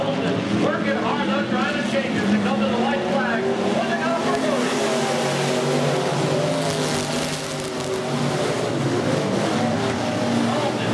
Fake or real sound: real